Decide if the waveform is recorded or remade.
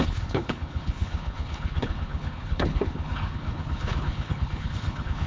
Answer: remade